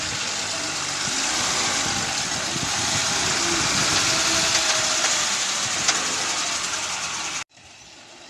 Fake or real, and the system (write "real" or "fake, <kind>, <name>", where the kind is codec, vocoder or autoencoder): real